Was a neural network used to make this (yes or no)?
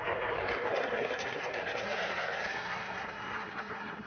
yes